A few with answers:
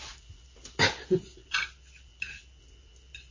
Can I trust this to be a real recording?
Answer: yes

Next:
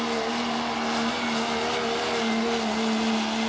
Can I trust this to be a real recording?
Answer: yes